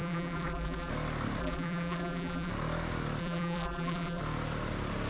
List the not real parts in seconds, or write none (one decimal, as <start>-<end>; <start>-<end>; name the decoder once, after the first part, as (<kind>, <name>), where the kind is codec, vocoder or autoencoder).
0.0-0.9 (vocoder, BigVGAN v2); 1.4-2.5; 3.2-4.2